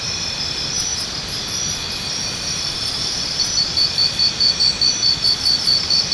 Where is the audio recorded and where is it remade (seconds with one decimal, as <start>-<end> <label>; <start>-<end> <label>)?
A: 0.0-6.1 recorded